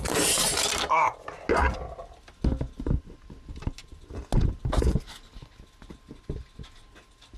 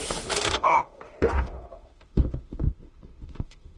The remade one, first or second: second